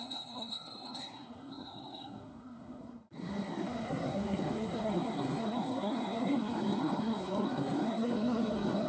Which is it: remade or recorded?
remade